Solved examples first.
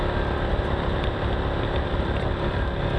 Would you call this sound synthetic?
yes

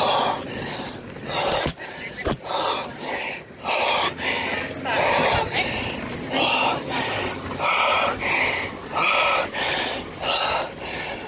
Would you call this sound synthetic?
no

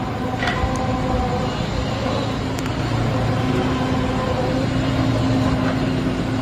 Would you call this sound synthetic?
no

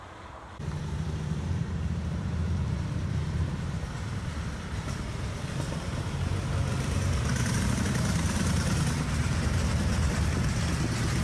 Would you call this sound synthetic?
yes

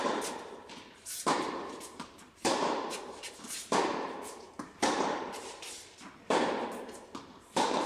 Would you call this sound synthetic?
yes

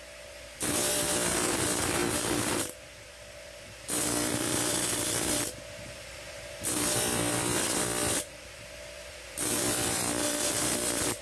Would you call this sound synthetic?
yes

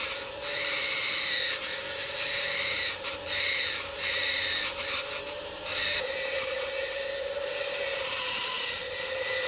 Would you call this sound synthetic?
yes